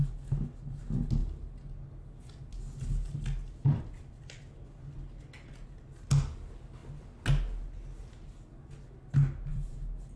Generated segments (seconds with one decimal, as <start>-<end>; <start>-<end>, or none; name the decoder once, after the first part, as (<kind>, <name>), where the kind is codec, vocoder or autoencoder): none